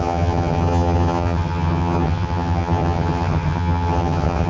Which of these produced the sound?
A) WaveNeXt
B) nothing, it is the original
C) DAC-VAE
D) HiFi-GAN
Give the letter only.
D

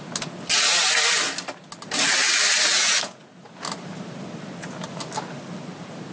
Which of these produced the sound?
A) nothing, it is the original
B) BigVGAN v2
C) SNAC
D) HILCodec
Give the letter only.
A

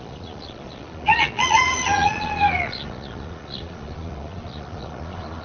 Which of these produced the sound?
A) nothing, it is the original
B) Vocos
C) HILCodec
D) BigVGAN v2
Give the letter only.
B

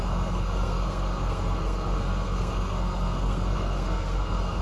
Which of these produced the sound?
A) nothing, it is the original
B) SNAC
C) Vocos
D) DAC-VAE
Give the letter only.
B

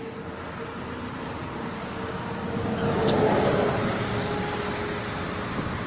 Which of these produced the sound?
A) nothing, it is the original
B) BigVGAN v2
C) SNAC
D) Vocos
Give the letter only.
A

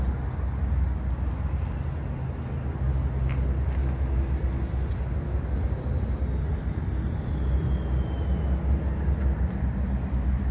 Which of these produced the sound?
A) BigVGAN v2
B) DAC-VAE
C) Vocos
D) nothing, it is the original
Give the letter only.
D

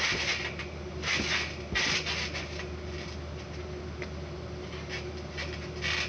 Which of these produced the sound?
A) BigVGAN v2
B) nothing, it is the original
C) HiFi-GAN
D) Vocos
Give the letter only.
B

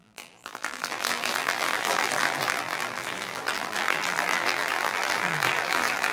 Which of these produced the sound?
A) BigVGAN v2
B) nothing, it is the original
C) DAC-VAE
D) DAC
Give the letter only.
A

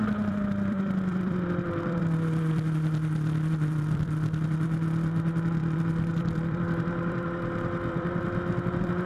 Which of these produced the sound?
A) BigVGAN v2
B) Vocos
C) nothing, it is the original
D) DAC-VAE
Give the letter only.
A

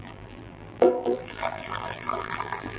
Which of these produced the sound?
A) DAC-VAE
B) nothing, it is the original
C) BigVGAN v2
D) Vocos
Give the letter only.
C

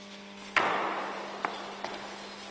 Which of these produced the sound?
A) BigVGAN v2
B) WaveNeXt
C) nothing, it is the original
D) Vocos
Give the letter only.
C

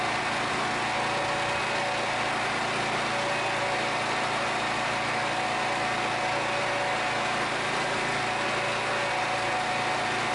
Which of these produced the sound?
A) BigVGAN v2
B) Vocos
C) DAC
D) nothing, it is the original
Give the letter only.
D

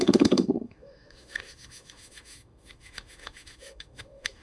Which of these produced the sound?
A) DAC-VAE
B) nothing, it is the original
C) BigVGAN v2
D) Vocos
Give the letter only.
A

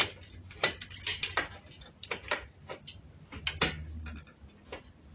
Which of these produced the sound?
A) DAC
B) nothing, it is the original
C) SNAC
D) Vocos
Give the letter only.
B